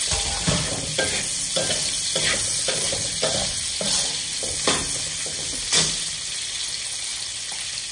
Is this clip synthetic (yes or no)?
no